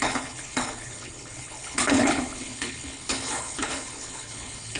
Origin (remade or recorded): remade